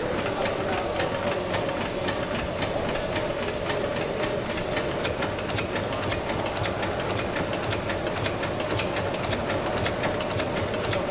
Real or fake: real